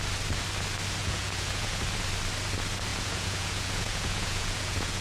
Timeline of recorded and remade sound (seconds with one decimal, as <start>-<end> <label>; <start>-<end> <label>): 0.0-1.0 recorded; 1.0-1.8 remade; 1.8-2.9 recorded; 2.9-5.0 remade